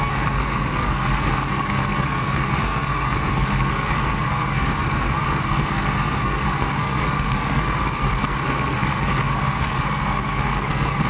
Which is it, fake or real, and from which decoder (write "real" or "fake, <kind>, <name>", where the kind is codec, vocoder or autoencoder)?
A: fake, codec, SNAC